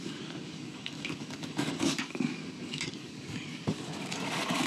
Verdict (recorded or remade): remade